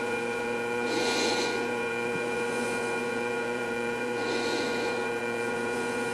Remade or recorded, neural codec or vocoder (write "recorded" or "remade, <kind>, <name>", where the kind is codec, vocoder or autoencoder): remade, vocoder, Vocos